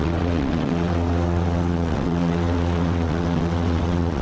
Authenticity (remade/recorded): remade